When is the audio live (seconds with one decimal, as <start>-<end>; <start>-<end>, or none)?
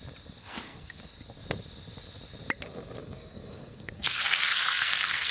0.0-0.4; 1.0-3.0